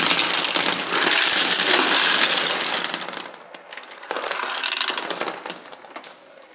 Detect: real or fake real